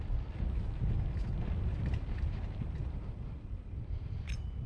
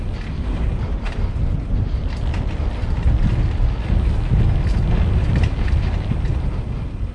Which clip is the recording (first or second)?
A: second